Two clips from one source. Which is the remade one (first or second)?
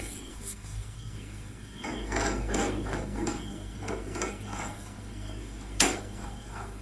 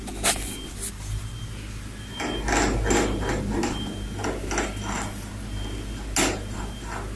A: first